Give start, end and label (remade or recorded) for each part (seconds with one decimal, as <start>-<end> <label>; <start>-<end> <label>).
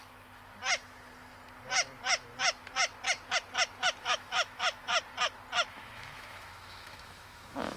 0.0-0.4 remade; 0.4-4.0 recorded; 4.0-4.9 remade; 4.9-5.7 recorded; 5.7-7.8 remade